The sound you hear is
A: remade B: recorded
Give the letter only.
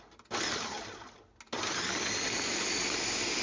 B